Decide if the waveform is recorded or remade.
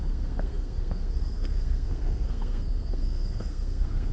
remade